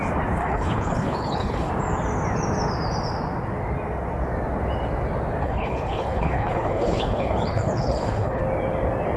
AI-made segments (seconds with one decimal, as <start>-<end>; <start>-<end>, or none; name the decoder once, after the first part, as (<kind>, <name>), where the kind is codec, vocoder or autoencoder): 0.4-1.7 (codec, HILCodec); 5.4-8.4